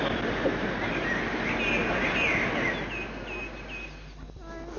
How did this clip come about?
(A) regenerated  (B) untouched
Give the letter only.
B